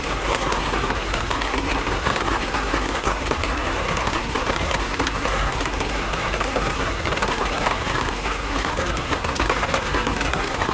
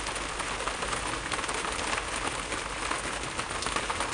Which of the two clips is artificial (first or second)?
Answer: first